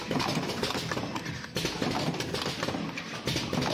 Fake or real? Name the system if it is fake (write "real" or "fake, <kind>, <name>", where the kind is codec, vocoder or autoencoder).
real